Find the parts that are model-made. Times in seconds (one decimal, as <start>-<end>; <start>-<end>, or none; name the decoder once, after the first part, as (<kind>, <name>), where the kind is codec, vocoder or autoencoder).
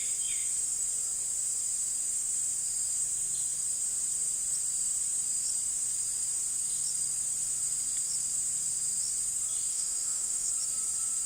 9.7-10.5 (autoencoder, DAC-VAE)